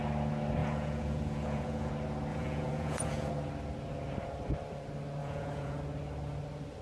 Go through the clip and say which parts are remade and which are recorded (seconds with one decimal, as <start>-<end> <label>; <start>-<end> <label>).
0.0-0.6 recorded; 0.6-1.9 remade; 1.9-2.3 recorded; 2.3-3.3 remade; 3.3-5.2 recorded; 5.2-5.8 remade; 5.8-6.8 recorded